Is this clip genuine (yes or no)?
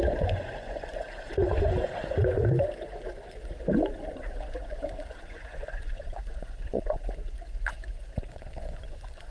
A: no